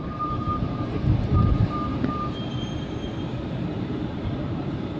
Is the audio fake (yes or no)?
yes